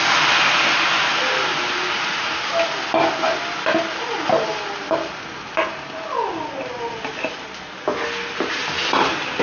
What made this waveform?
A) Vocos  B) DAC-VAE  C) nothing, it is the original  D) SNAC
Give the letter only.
C